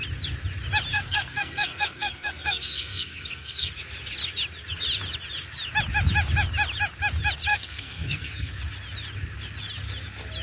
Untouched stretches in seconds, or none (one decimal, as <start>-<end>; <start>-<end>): 0.0-0.9; 3.7-7.5; 8.5-10.4